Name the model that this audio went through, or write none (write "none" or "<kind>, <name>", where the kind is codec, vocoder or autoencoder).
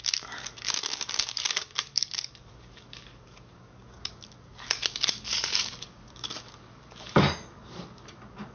codec, DAC